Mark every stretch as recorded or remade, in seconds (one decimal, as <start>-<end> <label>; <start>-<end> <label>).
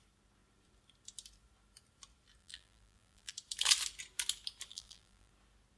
0.0-2.4 recorded; 2.4-3.3 remade; 3.3-4.7 recorded; 4.7-5.3 remade; 5.3-5.8 recorded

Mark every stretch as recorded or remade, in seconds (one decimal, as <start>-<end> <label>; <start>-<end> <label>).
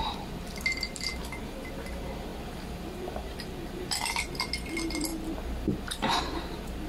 0.0-5.1 remade; 5.1-6.2 recorded; 6.2-6.9 remade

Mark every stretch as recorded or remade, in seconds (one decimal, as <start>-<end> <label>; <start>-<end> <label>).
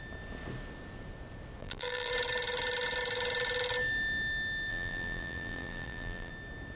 0.0-1.6 recorded; 1.6-2.1 remade; 2.1-4.7 recorded; 4.7-6.3 remade; 6.3-6.8 recorded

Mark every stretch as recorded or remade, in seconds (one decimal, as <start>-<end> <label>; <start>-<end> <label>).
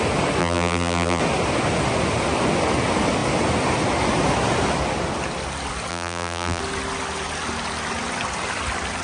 0.0-0.4 recorded; 0.4-1.2 remade; 1.2-5.9 recorded; 5.9-6.6 remade; 6.6-9.0 recorded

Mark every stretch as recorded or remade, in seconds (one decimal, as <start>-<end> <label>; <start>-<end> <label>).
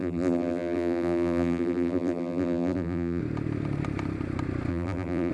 0.0-3.2 remade; 3.2-4.7 recorded; 4.7-5.3 remade